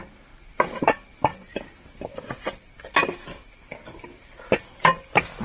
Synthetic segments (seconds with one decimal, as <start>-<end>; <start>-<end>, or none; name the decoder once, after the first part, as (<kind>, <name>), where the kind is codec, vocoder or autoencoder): none